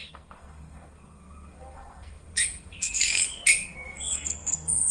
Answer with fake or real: fake